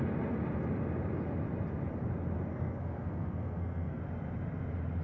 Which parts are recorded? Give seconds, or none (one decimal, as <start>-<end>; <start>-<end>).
0.0-2.5; 4.0-5.0